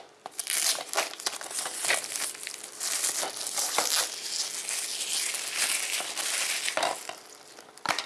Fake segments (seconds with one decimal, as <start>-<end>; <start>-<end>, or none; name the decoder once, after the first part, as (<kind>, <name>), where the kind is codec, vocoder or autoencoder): none